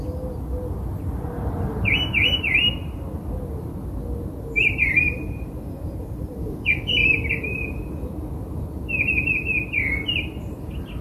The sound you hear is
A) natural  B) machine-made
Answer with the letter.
A